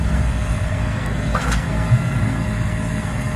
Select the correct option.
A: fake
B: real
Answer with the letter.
A